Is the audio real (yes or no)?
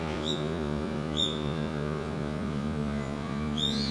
no